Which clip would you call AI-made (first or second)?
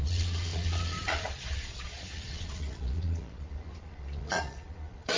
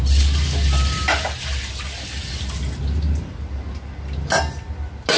first